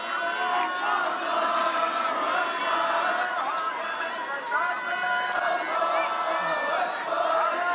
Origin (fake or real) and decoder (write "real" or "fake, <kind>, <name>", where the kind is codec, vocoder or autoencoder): real